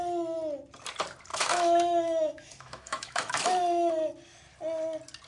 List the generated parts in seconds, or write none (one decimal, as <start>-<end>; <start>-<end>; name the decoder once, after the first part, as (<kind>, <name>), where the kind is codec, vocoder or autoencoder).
1.3-3.9 (autoencoder, DAC-VAE)